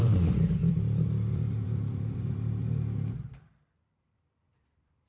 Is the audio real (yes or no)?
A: no